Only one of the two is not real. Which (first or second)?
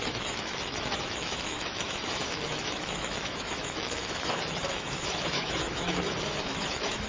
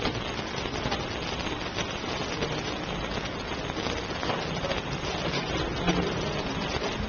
first